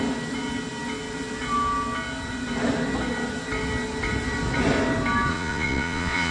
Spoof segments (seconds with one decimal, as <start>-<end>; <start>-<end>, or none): 5.3-6.3